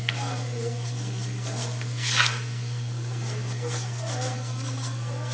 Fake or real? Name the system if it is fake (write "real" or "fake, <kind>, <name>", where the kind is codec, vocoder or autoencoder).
fake, codec, SNAC